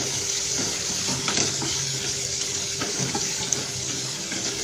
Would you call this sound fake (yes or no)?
yes